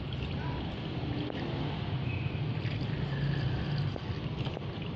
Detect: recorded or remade recorded